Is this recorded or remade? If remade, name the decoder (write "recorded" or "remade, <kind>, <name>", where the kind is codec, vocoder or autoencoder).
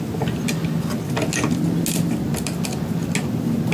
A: recorded